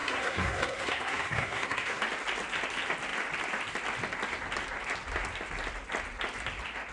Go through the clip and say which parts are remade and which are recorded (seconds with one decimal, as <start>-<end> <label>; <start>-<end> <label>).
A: 0.0-2.0 remade; 2.0-6.9 recorded